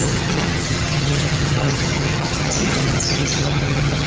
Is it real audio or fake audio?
fake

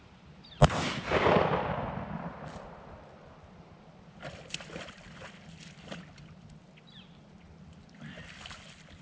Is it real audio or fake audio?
real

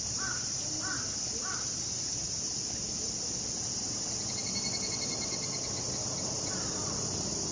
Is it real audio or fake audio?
real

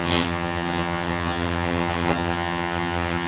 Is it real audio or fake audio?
fake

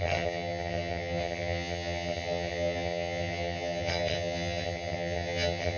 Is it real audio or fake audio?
fake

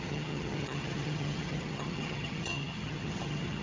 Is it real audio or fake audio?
fake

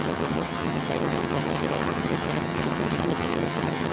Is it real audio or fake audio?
fake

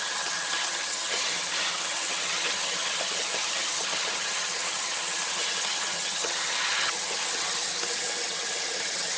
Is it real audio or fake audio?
fake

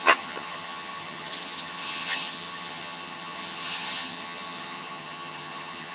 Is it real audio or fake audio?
fake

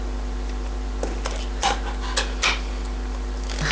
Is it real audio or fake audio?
real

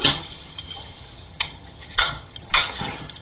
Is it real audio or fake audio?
fake